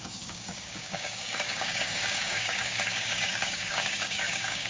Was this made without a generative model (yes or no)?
no